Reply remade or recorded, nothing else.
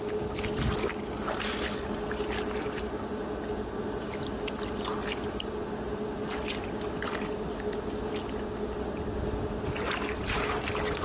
recorded